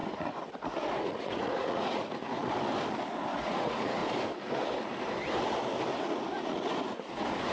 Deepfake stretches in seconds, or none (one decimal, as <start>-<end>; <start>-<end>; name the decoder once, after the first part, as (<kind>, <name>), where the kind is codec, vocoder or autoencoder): 0.0-2.4 (vocoder, Vocos); 3.3-4.0; 6.0-7.5